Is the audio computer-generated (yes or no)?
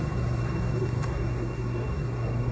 yes